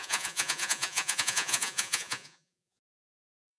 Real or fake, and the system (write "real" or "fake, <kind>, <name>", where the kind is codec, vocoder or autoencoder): fake, vocoder, Vocos